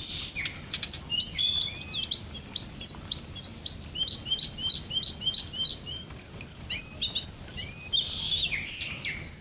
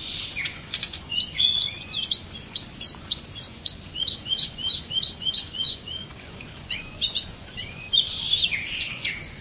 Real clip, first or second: first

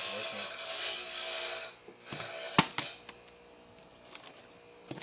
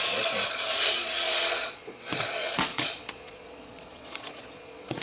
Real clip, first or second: first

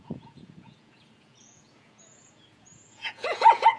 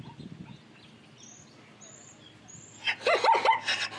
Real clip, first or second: second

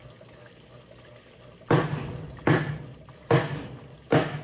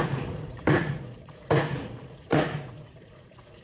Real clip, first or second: first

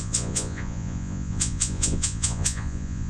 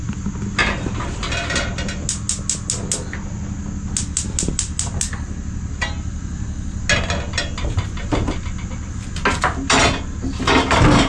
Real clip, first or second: second